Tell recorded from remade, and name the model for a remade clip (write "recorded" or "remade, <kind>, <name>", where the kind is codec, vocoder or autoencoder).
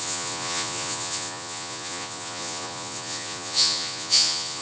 remade, vocoder, Vocos